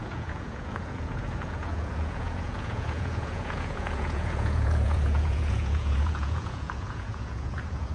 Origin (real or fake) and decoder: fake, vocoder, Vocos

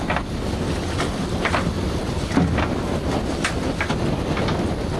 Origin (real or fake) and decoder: real